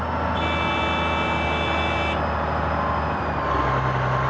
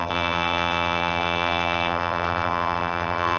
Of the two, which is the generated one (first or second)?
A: second